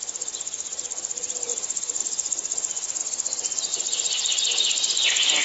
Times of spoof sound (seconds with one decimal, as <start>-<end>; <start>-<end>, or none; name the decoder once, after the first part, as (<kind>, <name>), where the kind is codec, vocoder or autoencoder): none